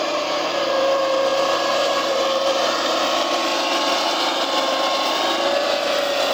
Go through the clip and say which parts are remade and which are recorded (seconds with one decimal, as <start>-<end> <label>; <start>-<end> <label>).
0.0-3.5 remade; 3.5-6.3 recorded